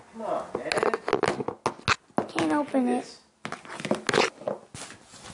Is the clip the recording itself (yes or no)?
yes